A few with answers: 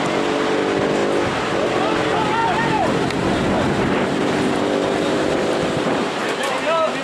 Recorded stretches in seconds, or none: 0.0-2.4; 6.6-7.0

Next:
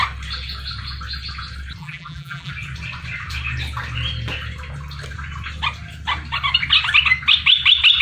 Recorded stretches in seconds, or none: 0.0-1.8; 2.5-8.0

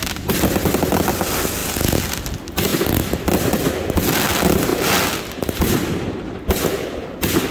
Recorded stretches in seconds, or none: 0.0-7.5

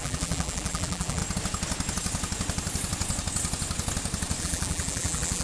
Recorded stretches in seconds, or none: 1.2-4.4

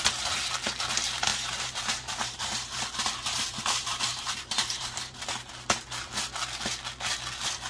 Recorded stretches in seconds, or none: 0.0-1.3; 5.2-7.7

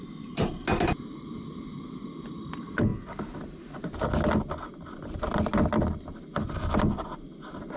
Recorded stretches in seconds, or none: 0.0-7.8

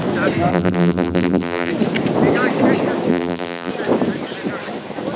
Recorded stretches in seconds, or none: 0.0-0.5; 1.7-3.1; 3.7-5.2

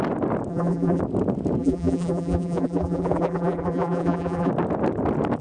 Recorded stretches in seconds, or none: 0.0-0.5; 1.0-1.6; 4.5-5.4